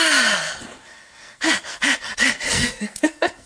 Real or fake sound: fake